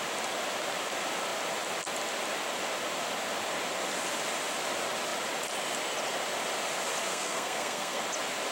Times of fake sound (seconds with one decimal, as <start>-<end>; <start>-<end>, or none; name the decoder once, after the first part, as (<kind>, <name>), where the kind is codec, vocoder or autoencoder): 7.1-8.0 (codec, SNAC)